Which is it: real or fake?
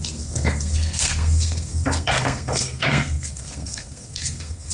fake